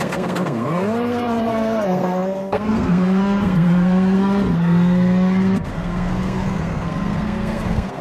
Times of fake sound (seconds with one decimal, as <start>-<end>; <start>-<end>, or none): 0.0-8.0

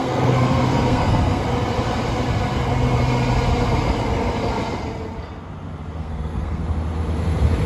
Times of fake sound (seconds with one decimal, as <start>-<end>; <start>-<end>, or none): 0.0-1.4; 6.0-6.6

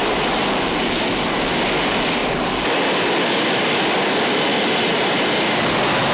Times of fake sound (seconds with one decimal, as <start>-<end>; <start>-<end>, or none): none

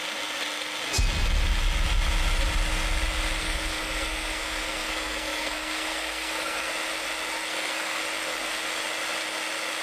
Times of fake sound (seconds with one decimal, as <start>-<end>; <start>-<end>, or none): 3.4-6.7; 7.4-8.0